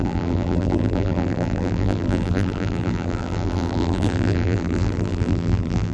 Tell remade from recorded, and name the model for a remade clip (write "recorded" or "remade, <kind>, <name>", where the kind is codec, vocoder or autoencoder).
remade, vocoder, BigVGAN v2